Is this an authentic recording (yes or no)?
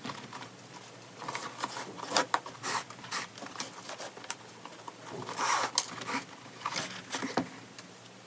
yes